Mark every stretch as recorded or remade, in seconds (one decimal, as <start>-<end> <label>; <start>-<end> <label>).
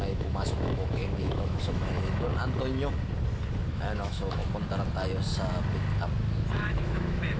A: 0.0-2.3 remade; 2.3-3.7 recorded; 3.7-4.4 remade; 4.4-6.5 recorded; 6.5-7.4 remade